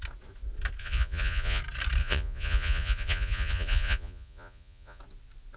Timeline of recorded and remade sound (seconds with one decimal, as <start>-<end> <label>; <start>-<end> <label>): 0.0-0.8 recorded; 0.8-1.6 remade; 1.6-2.0 recorded; 2.0-5.0 remade; 5.0-5.6 recorded